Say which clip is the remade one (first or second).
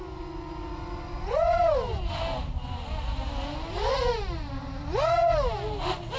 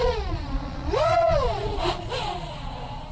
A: second